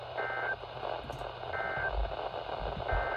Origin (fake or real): real